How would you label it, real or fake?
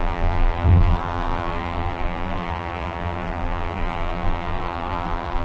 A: fake